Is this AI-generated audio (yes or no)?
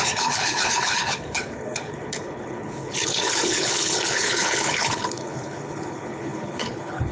yes